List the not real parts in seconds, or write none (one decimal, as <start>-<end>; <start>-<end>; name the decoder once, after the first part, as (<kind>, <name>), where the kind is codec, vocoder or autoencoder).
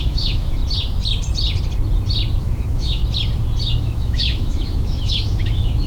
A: 0.0-0.6 (autoencoder, DAC-VAE); 2.4-3.0; 3.8-5.9